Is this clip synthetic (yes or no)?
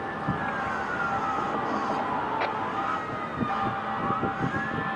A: no